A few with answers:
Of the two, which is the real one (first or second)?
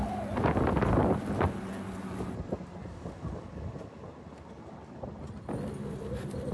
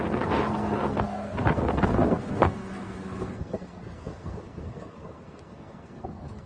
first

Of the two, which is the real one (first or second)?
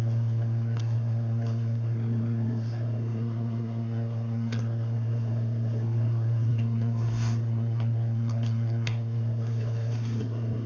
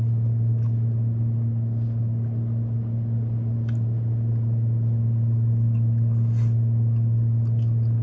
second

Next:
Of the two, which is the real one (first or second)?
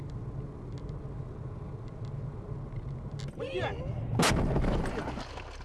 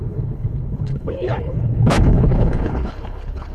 first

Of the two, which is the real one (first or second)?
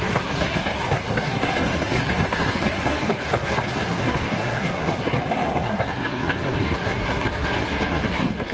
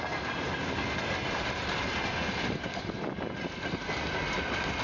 second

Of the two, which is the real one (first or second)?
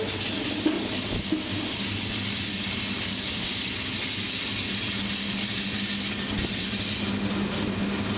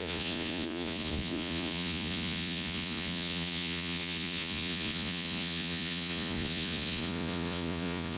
first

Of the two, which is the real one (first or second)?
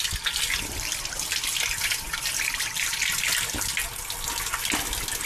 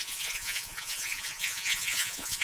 first